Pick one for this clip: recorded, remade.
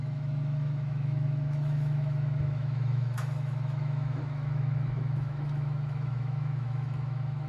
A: remade